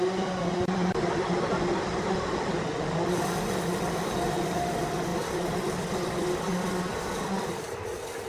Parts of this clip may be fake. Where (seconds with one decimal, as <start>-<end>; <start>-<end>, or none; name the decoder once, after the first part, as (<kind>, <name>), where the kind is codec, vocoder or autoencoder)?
5.1-7.6 (vocoder, BigVGAN v2)